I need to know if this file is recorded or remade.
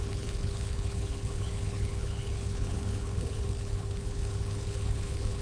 remade